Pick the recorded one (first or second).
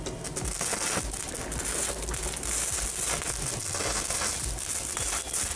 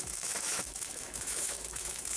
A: first